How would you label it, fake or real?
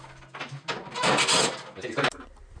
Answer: real